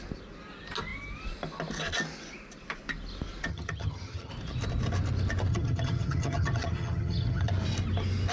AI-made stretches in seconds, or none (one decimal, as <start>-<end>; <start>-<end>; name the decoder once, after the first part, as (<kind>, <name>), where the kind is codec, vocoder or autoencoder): 3.5-4.3 (vocoder, HiFi-GAN); 5.5-7.5